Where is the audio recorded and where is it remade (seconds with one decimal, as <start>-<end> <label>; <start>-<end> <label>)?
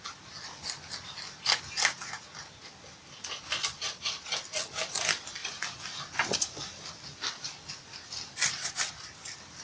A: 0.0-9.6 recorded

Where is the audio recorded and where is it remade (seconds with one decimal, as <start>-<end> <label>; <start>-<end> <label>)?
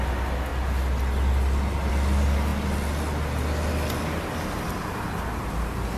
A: 0.0-6.0 recorded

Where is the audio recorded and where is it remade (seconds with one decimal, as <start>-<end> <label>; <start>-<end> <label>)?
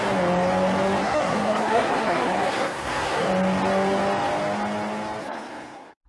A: 0.0-1.0 recorded; 1.0-3.3 remade; 3.3-5.2 recorded; 5.2-6.1 remade